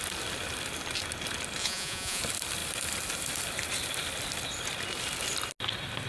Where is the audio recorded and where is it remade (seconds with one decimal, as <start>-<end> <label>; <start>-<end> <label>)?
0.0-1.6 recorded; 1.6-2.2 remade; 2.2-6.1 recorded